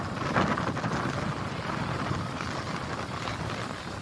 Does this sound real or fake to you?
real